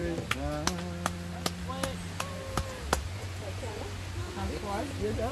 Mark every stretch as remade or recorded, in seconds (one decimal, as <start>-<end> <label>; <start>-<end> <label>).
0.0-3.1 recorded; 3.1-3.8 remade; 3.8-5.3 recorded